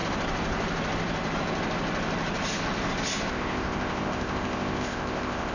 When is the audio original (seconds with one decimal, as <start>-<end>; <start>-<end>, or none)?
0.0-3.3